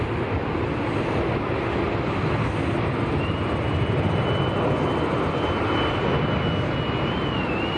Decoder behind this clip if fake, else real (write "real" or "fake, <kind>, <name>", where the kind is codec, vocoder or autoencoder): real